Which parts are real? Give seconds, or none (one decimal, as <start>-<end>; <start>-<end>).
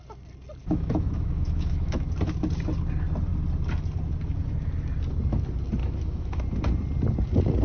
0.0-0.6; 2.1-5.8; 6.4-7.6